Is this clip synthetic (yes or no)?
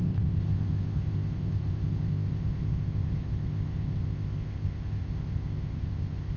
yes